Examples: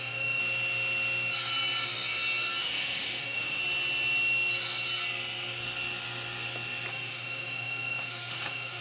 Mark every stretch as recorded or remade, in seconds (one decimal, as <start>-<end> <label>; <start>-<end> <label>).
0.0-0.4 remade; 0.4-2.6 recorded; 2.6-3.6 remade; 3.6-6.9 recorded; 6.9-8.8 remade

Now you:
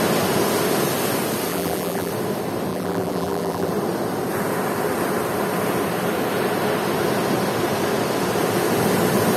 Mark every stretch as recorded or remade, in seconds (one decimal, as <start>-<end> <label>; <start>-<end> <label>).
0.0-1.5 recorded; 1.5-2.1 remade; 2.1-2.7 recorded; 2.7-3.7 remade; 3.7-9.4 recorded

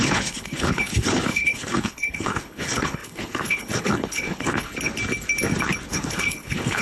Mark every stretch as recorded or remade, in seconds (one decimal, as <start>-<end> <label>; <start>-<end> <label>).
0.0-4.7 remade; 4.7-5.9 recorded; 5.9-6.8 remade

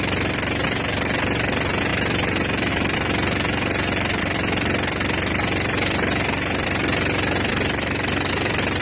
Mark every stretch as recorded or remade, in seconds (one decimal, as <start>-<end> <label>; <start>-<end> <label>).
0.0-8.8 recorded

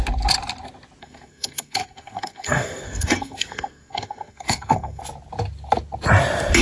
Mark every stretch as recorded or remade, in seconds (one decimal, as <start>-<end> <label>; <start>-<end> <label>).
0.0-1.0 recorded; 1.0-5.0 remade; 5.0-6.6 recorded

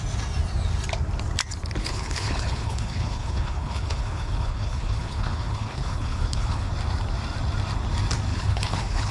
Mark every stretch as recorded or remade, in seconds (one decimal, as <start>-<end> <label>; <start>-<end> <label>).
0.0-1.8 recorded; 1.8-6.7 remade; 6.7-8.3 recorded; 8.3-9.1 remade